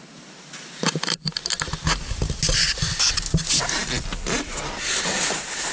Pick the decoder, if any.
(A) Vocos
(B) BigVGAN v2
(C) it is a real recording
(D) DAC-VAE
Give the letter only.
C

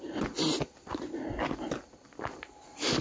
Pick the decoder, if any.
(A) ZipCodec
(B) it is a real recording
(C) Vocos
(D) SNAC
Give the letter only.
B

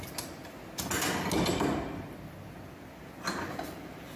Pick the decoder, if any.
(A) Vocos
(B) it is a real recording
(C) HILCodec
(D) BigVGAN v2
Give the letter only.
B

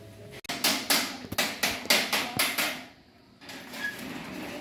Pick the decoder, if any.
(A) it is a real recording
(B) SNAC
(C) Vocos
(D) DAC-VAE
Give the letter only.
A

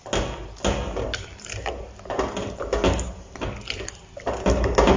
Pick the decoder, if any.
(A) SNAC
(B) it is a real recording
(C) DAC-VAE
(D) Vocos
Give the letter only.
B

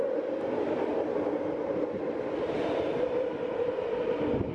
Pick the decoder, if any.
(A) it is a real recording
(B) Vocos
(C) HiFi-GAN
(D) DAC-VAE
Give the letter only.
A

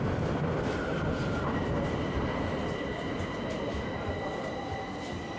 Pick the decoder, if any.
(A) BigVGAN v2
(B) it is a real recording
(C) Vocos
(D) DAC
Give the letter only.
B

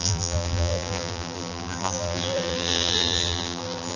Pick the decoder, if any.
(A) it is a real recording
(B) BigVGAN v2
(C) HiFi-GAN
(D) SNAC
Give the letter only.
B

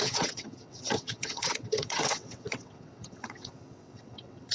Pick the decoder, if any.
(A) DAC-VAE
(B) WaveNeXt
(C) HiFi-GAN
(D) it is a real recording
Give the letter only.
B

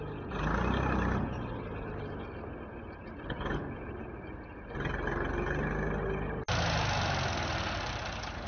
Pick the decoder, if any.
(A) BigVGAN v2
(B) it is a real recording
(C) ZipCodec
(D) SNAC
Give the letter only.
B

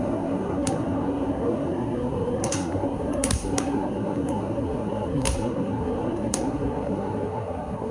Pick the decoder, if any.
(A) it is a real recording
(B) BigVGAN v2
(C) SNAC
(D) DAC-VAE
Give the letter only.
C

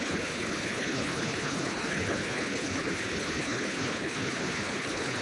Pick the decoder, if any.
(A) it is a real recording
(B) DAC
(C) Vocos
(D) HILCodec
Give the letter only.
D